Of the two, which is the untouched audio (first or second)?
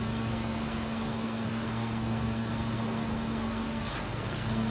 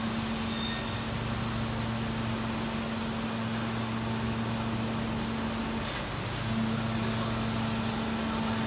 second